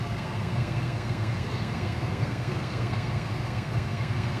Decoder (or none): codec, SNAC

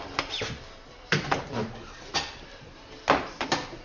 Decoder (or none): none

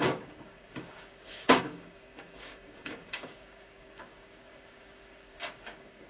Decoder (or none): codec, DAC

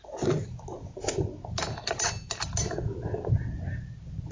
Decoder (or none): none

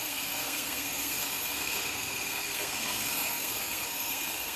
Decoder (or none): codec, SNAC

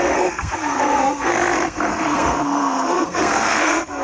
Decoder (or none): codec, SNAC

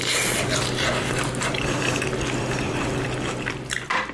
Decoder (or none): vocoder, BigVGAN v2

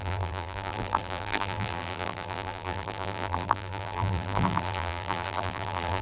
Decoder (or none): vocoder, BigVGAN v2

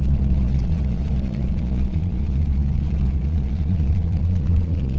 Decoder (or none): vocoder, Vocos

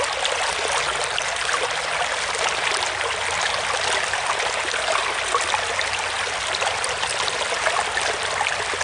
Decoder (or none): none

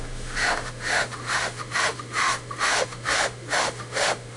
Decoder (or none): autoencoder, DAC-VAE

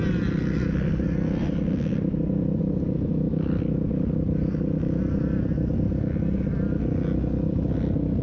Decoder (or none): none